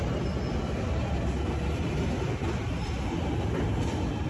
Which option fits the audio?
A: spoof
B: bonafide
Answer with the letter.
B